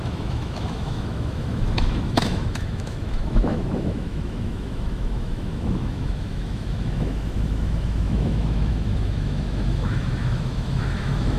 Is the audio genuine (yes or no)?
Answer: no